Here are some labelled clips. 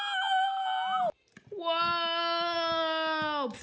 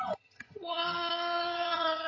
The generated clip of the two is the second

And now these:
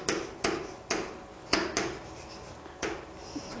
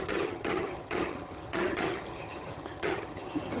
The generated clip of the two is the second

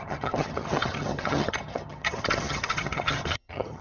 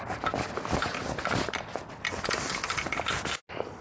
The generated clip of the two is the first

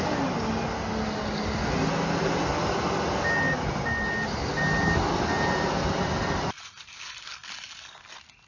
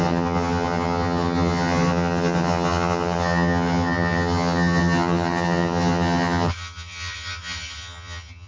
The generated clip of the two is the second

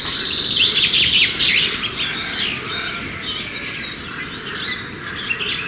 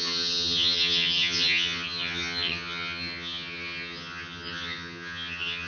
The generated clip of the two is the second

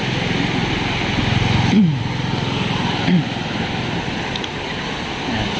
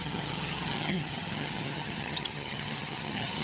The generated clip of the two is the second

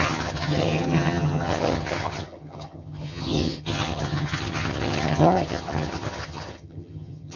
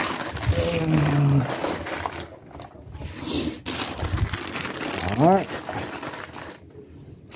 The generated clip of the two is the first